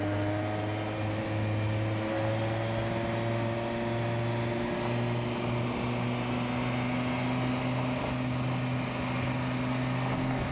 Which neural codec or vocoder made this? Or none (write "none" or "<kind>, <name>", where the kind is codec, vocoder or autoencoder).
none